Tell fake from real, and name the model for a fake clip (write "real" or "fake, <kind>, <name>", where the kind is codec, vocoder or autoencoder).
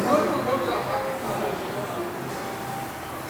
real